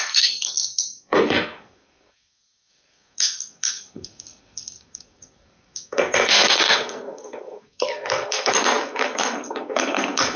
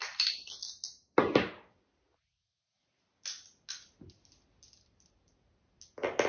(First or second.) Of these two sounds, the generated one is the first